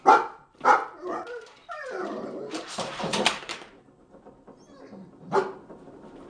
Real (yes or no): no